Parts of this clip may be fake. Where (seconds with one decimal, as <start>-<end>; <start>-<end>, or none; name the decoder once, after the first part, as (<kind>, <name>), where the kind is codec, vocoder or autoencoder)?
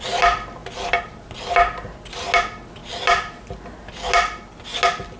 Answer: none